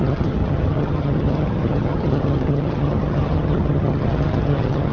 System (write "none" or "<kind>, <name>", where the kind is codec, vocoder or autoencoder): vocoder, HiFi-GAN